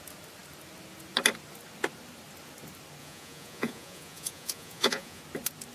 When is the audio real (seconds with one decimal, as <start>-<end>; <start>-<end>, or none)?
0.0-3.0; 5.2-5.7